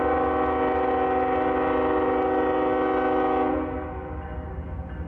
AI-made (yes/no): no